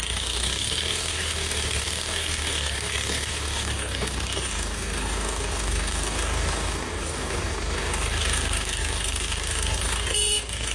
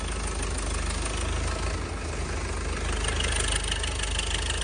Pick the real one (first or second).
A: second